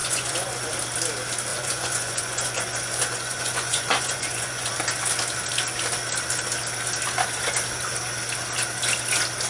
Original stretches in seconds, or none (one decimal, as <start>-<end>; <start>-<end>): 0.7-1.5; 4.7-9.5